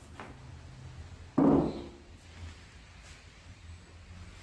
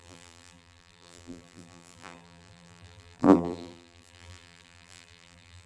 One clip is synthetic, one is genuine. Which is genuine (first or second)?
first